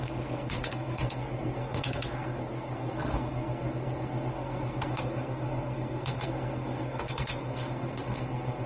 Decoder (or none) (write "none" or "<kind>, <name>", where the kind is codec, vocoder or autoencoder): codec, SNAC